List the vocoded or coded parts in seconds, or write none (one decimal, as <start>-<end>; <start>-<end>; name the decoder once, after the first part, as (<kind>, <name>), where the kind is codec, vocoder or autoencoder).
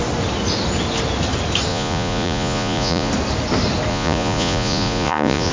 1.7-3.1 (vocoder, Vocos); 3.9-5.5